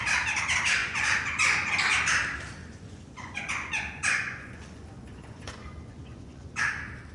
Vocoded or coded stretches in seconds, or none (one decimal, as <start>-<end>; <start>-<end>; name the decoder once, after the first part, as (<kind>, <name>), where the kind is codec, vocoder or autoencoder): 0.8-1.7 (vocoder, Vocos); 2.6-6.6